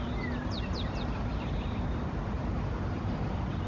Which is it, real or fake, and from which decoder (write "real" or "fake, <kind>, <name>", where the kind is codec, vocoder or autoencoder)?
fake, vocoder, BigVGAN v2